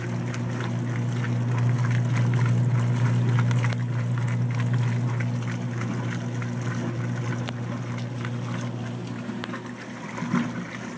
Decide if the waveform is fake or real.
real